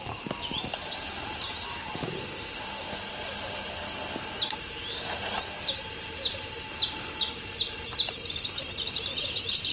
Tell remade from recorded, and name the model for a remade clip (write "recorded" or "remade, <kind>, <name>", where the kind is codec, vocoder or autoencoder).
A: recorded